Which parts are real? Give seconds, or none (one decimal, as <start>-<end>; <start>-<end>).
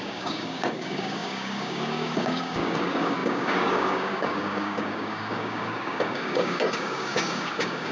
none